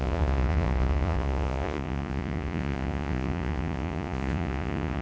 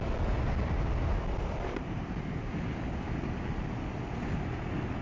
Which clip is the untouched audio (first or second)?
second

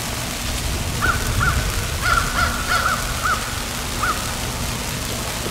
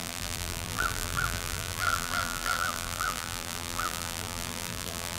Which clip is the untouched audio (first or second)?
first